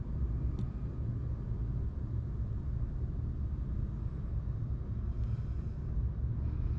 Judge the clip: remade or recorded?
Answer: recorded